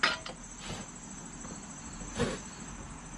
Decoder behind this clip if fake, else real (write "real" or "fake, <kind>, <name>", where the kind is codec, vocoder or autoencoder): real